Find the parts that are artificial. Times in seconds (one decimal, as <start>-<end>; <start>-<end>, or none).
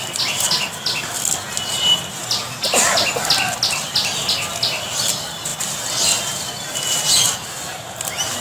none